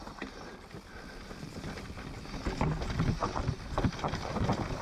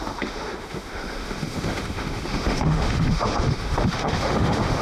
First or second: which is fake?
second